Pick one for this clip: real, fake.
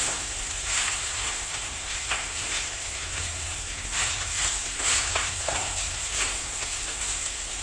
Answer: fake